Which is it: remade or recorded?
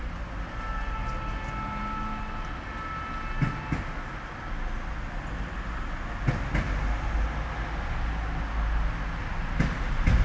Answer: recorded